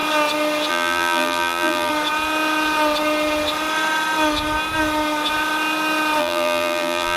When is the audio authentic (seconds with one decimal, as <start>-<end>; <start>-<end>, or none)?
0.0-0.7; 1.9-6.2